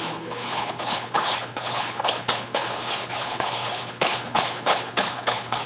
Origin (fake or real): fake